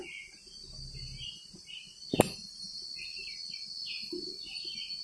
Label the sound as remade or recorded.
recorded